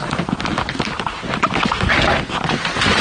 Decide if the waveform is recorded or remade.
recorded